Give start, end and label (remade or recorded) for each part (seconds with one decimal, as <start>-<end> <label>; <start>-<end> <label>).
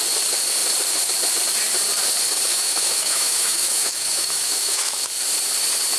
0.0-2.5 recorded; 2.5-5.1 remade; 5.1-6.0 recorded